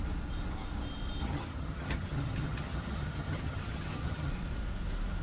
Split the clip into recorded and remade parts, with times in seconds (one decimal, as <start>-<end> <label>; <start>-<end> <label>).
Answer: 0.0-1.2 recorded; 1.2-4.3 remade; 4.3-5.2 recorded